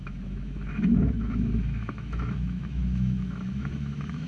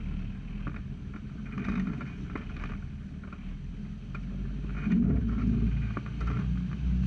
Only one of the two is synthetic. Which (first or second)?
first